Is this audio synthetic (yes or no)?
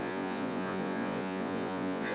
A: yes